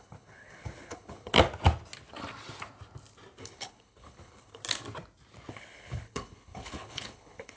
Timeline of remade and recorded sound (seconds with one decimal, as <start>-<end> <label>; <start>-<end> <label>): 0.0-1.3 remade; 1.3-3.4 recorded; 3.4-4.6 remade; 4.6-5.5 recorded; 5.5-7.6 remade